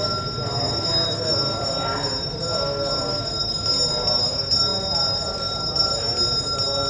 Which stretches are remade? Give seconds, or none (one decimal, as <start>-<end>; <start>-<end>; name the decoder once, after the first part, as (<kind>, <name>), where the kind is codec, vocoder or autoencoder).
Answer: none